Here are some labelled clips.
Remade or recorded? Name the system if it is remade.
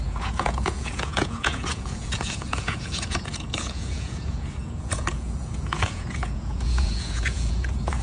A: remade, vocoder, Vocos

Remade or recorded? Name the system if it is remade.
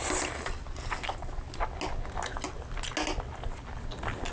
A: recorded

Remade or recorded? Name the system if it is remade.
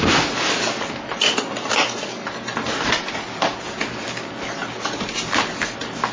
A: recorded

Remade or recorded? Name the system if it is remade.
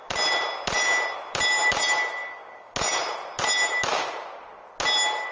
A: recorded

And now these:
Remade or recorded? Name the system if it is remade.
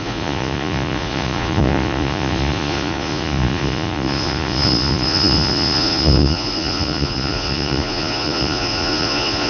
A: remade, vocoder, Vocos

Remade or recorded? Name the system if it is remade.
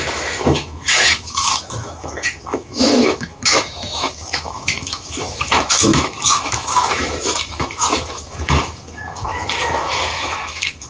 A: remade, autoencoder, DAC-VAE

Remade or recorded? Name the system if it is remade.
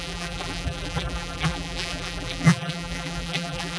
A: remade, vocoder, BigVGAN v2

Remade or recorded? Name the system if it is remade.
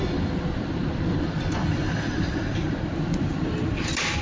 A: remade, vocoder, BigVGAN v2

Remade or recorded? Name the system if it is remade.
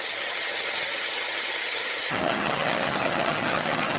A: remade, vocoder, HiFi-GAN